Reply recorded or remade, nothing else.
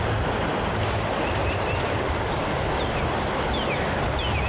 recorded